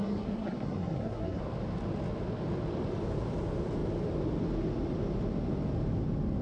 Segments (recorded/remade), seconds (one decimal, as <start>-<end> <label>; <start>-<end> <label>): 0.0-1.4 remade; 1.4-6.4 recorded